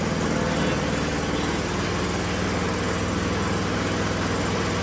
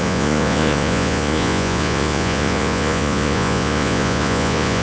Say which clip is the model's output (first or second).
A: second